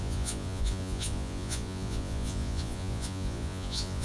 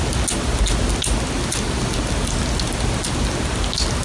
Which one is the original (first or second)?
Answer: second